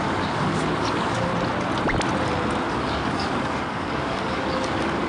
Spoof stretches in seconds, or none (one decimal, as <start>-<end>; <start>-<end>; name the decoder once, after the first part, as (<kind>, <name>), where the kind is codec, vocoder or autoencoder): 0.0-1.3 (codec, DAC); 2.7-5.1